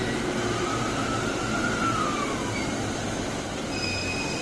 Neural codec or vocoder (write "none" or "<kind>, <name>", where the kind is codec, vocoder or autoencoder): none